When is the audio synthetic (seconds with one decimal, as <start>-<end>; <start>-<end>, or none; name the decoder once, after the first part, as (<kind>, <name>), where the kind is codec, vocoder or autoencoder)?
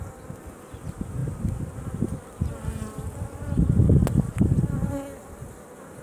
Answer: none